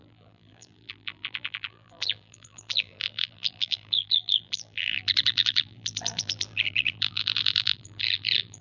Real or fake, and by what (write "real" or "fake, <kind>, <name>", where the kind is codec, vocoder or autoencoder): fake, vocoder, BigVGAN v2